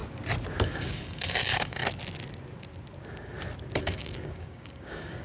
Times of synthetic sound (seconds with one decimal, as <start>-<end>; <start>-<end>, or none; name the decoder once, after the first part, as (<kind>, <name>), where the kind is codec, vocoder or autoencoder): 0.6-1.8 (codec, DAC); 3.8-5.2